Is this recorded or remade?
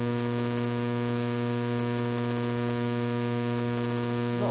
recorded